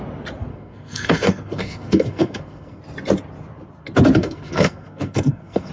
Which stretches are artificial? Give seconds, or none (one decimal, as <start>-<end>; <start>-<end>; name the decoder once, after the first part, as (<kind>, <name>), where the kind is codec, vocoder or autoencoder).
0.5-2.8 (codec, SNAC); 4.2-5.7